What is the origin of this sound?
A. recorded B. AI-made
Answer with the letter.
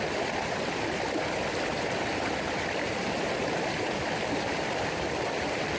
B